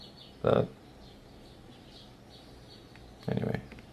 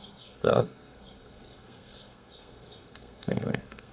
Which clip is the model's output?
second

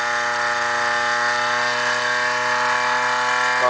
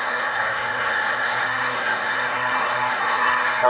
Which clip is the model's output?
second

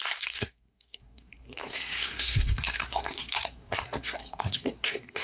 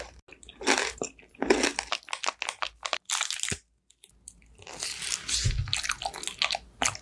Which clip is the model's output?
first